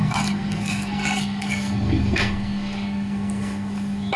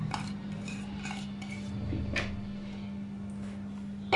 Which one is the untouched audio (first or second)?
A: second